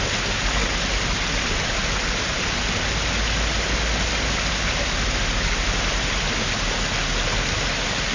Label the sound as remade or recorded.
recorded